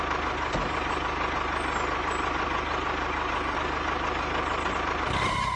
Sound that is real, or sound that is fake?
real